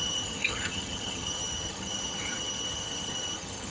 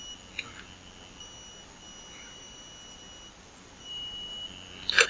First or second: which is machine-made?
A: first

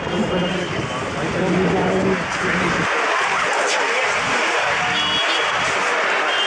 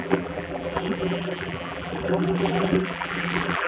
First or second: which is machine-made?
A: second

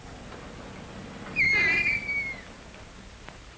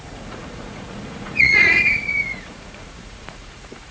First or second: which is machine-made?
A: second